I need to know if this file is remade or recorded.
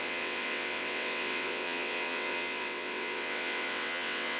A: remade